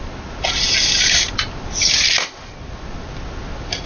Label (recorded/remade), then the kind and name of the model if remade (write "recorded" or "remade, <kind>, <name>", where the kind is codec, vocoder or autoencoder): recorded